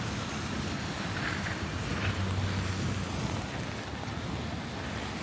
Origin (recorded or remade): recorded